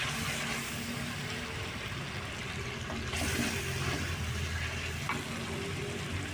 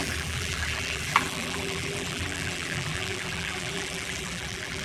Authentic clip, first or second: first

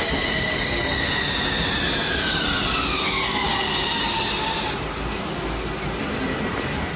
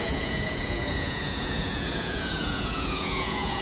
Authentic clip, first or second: first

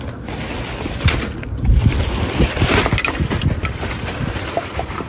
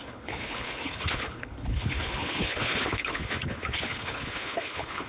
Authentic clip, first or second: first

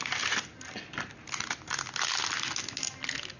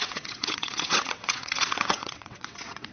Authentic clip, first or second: first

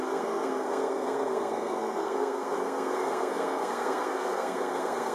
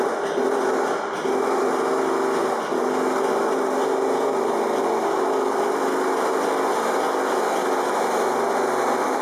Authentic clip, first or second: second